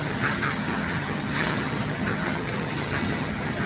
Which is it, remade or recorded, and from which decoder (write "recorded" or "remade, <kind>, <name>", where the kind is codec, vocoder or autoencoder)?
remade, vocoder, HiFi-GAN